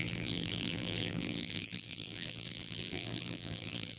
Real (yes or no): no